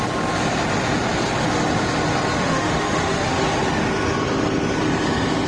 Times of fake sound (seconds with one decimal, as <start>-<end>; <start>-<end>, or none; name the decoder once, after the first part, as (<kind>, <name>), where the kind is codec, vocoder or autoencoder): 2.4-3.4 (autoencoder, DAC-VAE)